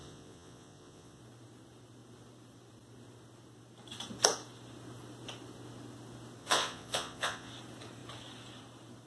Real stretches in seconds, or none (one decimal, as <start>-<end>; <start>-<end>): 1.2-6.4; 7.5-9.1